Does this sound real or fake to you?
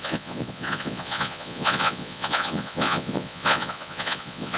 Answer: fake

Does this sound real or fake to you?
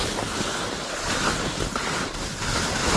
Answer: real